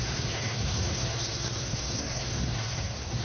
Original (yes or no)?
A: no